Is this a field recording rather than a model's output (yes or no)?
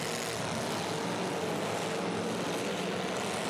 yes